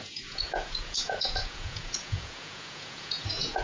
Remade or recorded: remade